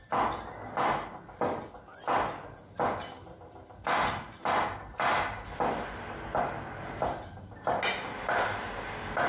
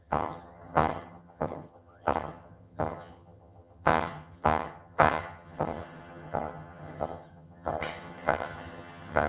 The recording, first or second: first